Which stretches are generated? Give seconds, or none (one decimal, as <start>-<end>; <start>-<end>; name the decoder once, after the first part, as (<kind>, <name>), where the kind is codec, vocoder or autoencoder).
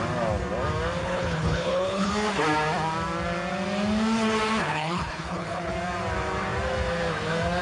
1.0-2.1 (codec, HILCodec); 4.6-5.7